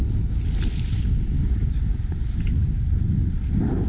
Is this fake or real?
real